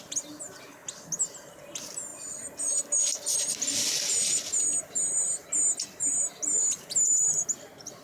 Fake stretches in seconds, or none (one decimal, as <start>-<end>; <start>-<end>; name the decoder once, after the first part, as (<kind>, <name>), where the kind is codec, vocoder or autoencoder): none